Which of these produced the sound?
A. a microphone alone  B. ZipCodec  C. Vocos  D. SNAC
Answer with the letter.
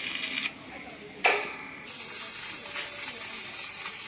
A